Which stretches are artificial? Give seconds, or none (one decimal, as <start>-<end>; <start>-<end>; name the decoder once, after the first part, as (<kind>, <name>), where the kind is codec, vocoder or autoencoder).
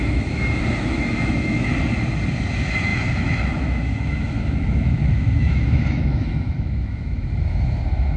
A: 0.0-1.7 (autoencoder, DAC-VAE); 2.5-8.2